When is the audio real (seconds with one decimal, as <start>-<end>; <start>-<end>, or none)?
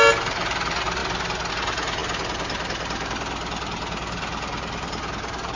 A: 0.0-5.6